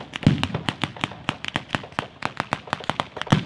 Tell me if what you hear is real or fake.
real